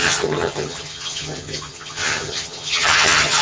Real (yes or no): no